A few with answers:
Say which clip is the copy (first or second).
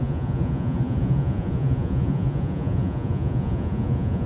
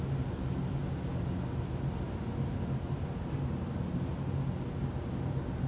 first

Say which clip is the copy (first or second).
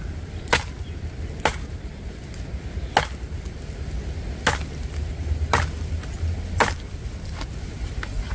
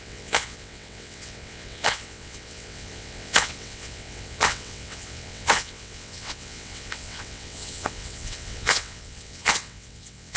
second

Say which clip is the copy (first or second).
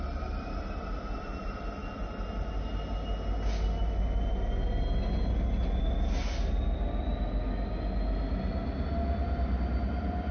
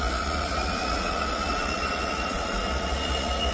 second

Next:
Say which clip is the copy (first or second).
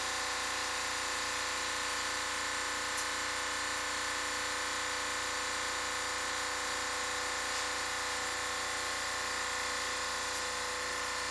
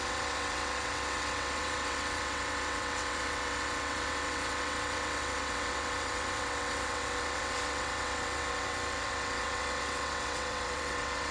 second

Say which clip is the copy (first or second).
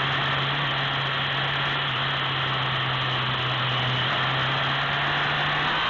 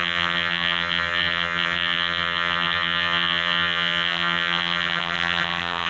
second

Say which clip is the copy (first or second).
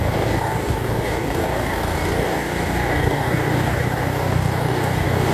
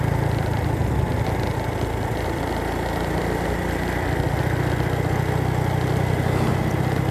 first